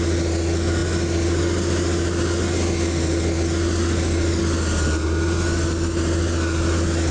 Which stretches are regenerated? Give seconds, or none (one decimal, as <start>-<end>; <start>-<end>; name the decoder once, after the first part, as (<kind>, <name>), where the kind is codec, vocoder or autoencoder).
none